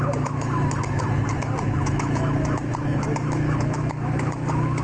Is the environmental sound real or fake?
fake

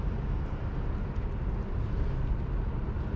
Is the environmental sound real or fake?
real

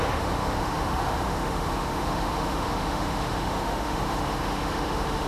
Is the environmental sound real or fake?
fake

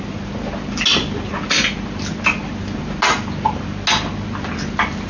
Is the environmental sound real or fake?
real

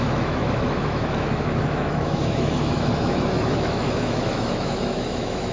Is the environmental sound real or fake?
fake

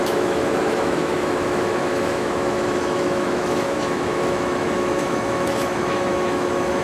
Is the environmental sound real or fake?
fake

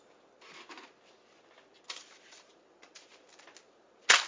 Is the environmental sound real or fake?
real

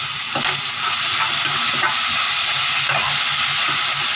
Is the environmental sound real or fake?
real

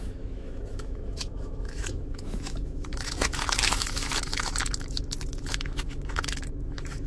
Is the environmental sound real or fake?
fake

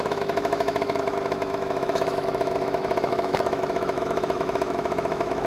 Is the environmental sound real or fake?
fake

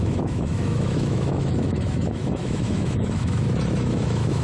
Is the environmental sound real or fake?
fake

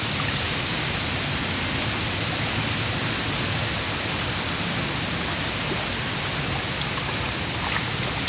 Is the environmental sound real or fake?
real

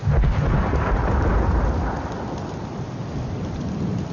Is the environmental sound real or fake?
real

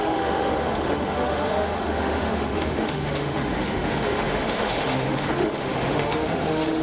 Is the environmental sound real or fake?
fake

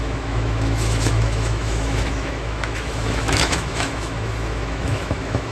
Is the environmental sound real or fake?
fake